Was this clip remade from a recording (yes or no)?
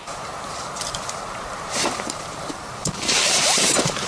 yes